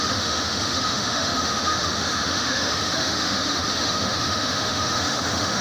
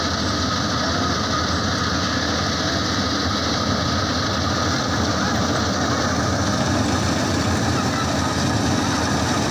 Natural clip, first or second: second